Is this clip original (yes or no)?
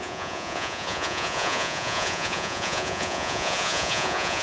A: no